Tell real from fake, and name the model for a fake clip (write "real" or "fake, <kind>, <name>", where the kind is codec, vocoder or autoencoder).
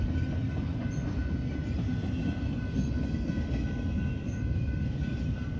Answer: real